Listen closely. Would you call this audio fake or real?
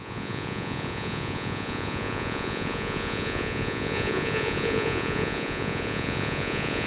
fake